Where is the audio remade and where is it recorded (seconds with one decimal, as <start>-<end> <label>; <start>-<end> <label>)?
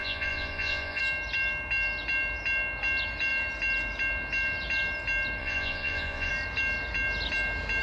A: 0.0-1.0 remade; 1.0-5.4 recorded; 5.4-6.3 remade; 6.3-7.8 recorded